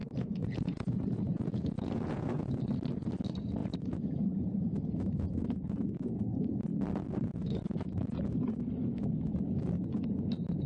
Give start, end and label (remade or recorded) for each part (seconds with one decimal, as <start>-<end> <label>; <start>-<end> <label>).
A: 0.0-2.6 remade; 2.6-3.6 recorded; 3.6-6.2 remade; 6.2-10.7 recorded